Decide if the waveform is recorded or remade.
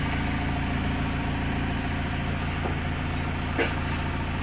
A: recorded